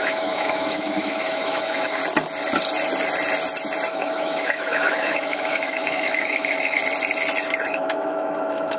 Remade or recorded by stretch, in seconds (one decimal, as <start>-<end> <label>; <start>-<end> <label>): 0.0-2.0 remade; 2.0-3.9 recorded; 3.9-6.8 remade; 6.8-7.7 recorded; 7.7-8.8 remade